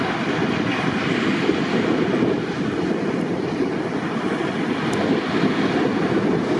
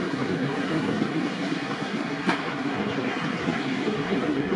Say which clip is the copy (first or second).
second